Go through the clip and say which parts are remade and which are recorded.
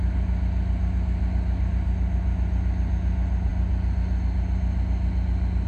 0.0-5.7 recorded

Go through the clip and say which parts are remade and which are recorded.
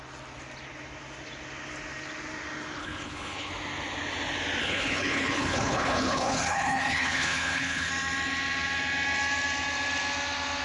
0.0-2.8 recorded; 2.8-3.5 remade; 3.5-4.6 recorded; 4.6-7.9 remade; 7.9-10.6 recorded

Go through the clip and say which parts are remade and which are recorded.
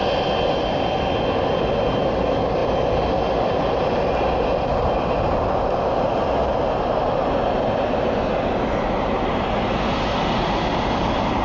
0.0-11.4 recorded